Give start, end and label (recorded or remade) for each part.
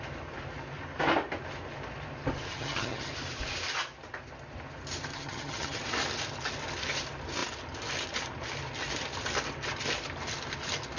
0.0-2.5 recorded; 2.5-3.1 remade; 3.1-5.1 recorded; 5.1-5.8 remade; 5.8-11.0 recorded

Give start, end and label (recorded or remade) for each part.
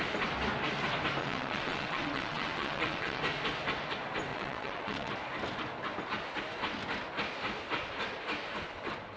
0.0-1.2 recorded; 1.2-3.2 remade; 3.2-4.3 recorded; 4.3-5.1 remade; 5.1-9.2 recorded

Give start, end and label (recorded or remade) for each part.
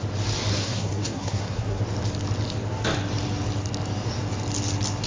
0.0-0.5 recorded; 0.5-1.8 remade; 1.8-5.1 recorded